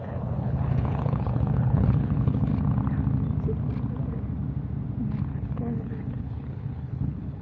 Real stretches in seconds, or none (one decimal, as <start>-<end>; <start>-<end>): 2.5-5.2